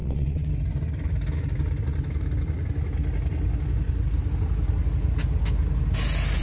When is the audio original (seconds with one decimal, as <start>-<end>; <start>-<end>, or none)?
0.5-6.4